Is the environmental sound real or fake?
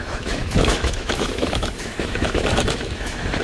fake